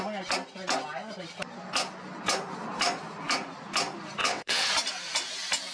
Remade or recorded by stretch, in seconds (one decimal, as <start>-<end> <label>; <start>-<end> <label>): 0.0-4.2 recorded; 4.2-4.7 remade; 4.7-5.7 recorded